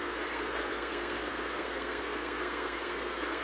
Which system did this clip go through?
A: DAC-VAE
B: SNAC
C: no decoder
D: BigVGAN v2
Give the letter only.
B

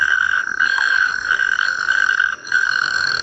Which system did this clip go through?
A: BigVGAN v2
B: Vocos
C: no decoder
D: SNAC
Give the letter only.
D